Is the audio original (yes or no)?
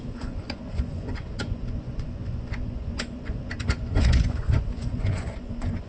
no